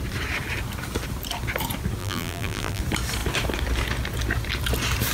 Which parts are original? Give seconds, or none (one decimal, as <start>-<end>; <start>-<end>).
0.0-2.0; 2.8-5.1